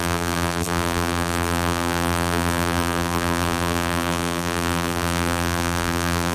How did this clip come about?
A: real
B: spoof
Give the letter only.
B